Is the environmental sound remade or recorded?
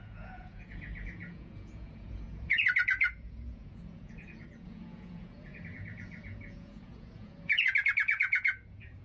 remade